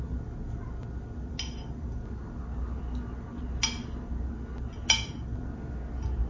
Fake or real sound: real